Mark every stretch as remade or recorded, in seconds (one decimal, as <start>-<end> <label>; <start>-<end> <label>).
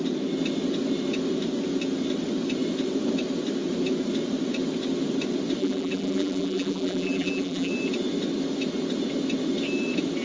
0.0-5.6 recorded; 5.6-7.7 remade; 7.7-10.2 recorded